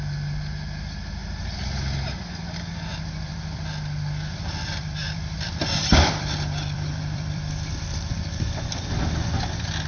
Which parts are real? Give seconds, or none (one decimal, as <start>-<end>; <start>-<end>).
0.0-2.9; 7.7-9.9